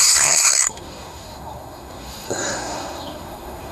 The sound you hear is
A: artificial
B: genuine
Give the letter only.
A